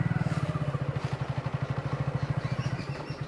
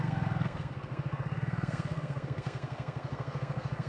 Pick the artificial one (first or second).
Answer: second